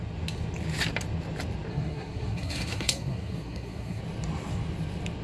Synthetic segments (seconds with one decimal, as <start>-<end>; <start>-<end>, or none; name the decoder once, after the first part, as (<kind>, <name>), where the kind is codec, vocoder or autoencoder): 1.7-4.0 (codec, SNAC)